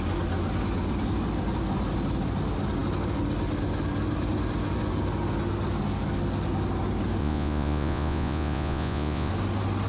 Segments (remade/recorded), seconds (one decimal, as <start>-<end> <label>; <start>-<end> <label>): 0.0-7.2 recorded; 7.2-9.3 remade; 9.3-9.9 recorded